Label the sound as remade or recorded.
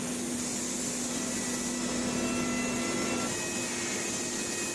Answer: recorded